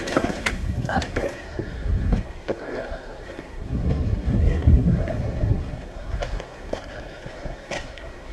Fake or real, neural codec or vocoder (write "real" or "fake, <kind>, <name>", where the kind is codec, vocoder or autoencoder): fake, codec, SNAC